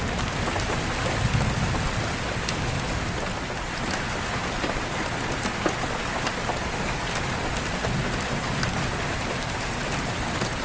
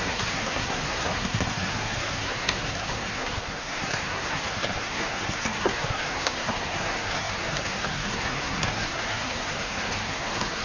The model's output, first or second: second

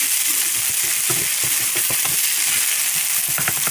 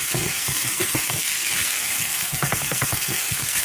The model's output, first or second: second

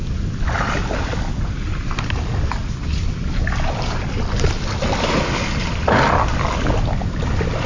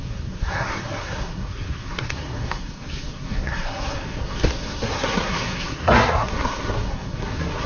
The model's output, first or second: second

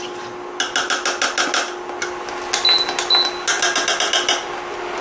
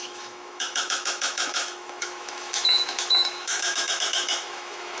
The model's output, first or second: second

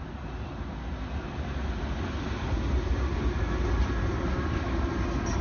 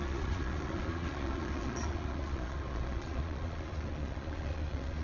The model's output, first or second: second